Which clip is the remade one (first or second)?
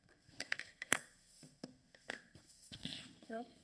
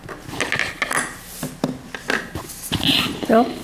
first